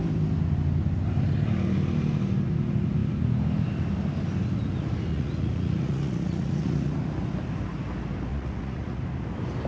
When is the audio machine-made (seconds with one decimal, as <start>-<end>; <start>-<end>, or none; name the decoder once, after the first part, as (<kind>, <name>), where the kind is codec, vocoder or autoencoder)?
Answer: 5.1-7.0 (vocoder, Vocos); 8.3-9.0